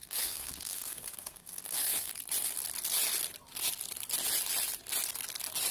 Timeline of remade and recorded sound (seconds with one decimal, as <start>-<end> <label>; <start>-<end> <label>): 0.0-2.1 remade; 2.1-5.7 recorded